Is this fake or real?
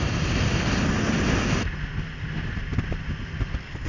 real